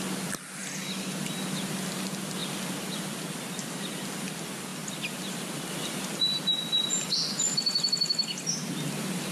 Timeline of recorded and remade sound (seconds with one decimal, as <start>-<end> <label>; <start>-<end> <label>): 0.0-9.3 recorded

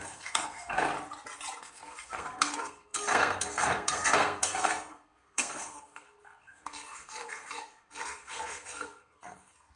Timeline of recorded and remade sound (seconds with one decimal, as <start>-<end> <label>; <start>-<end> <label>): 0.0-0.9 remade; 0.9-1.6 recorded; 1.6-9.8 remade

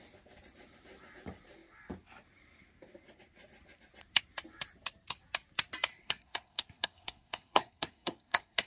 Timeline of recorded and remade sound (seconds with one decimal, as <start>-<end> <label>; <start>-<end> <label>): 0.0-5.9 recorded; 5.9-8.7 remade

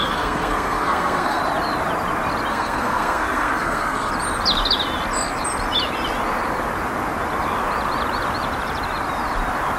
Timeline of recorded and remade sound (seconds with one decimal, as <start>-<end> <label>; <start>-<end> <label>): 0.0-1.4 remade; 1.4-2.5 recorded; 2.5-4.1 remade; 4.1-9.8 recorded

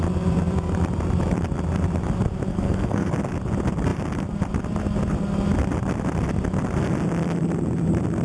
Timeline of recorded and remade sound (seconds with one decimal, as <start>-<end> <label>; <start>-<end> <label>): 0.0-2.5 recorded; 2.5-3.1 remade; 3.1-8.2 recorded

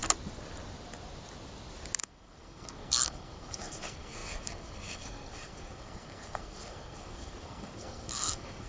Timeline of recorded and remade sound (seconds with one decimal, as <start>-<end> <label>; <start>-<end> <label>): 0.0-2.0 recorded; 2.0-8.7 remade

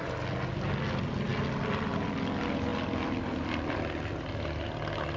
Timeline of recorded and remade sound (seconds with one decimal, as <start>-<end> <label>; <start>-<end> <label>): 0.0-5.2 recorded

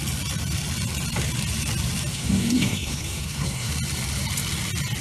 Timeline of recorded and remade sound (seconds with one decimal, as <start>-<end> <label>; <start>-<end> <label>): 0.0-2.1 recorded; 2.1-3.7 remade; 3.7-5.0 recorded